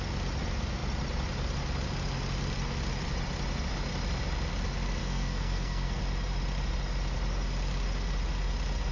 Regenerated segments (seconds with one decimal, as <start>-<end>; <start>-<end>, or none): 5.0-6.0